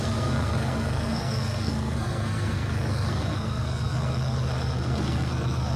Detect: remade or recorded remade